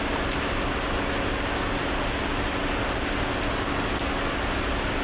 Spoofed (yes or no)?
no